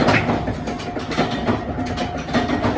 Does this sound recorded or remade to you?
recorded